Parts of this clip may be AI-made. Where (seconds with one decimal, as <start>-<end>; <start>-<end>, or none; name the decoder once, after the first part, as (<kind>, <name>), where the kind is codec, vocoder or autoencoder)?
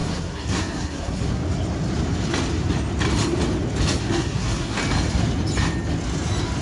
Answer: 0.0-1.4 (codec, SNAC); 4.0-4.8